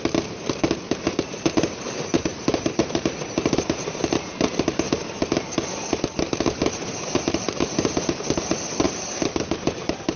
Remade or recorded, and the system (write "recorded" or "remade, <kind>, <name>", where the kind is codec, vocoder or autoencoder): remade, vocoder, BigVGAN v2